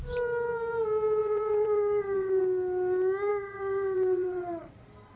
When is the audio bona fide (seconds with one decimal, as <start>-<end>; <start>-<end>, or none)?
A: 0.0-1.2; 2.4-3.3; 4.7-5.2